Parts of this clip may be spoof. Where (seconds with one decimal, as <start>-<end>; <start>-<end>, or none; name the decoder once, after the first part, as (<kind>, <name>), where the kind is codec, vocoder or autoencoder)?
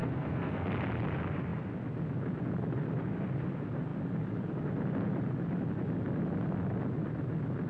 0.0-0.7 (codec, SNAC)